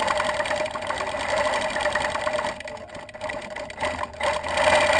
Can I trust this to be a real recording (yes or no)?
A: yes